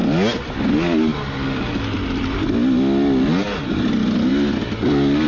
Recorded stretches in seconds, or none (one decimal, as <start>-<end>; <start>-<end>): 0.0-5.3

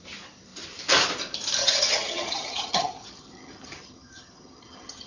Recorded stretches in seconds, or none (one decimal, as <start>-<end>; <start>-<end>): 0.0-1.6

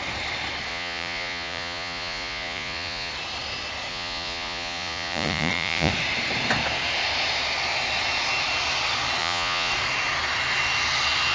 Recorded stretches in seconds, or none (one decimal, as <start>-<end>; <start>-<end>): 0.0-0.7; 3.1-3.9; 5.9-9.2; 9.7-11.3